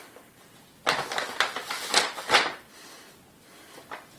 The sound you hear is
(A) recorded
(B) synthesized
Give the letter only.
A